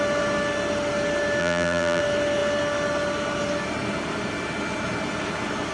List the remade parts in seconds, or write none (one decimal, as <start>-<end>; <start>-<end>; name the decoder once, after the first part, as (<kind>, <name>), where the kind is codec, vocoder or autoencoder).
1.4-2.0 (vocoder, BigVGAN v2)